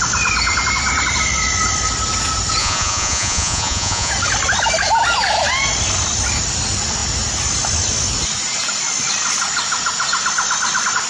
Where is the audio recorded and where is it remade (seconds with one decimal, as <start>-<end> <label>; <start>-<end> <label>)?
0.0-2.6 recorded; 2.6-4.1 remade; 4.1-11.1 recorded

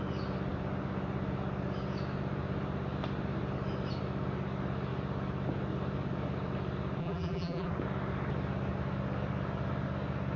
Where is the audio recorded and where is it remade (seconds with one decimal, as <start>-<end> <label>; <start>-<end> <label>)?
0.0-7.0 recorded; 7.0-7.7 remade; 7.7-10.4 recorded

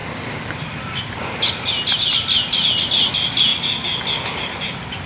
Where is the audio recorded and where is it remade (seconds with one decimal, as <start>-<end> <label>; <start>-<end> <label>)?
0.0-5.1 recorded

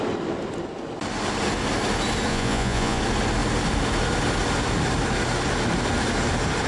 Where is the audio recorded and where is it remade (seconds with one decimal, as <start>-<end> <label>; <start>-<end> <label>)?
0.0-2.3 recorded; 2.3-3.0 remade; 3.0-6.7 recorded

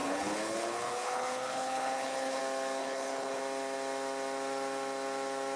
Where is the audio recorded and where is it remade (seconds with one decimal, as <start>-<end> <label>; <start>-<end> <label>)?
0.0-2.4 remade; 2.4-2.8 recorded; 2.8-3.4 remade; 3.4-5.6 recorded

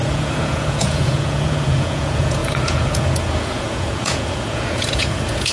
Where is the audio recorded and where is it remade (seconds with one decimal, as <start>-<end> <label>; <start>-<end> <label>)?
0.0-5.5 remade